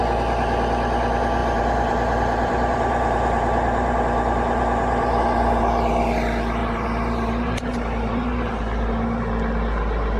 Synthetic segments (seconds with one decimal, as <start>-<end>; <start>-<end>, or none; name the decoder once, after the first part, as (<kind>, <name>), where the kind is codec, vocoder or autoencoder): 1.4-5.6 (vocoder, BigVGAN v2); 6.6-9.2